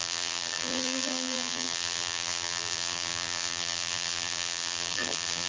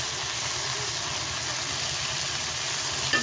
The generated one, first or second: first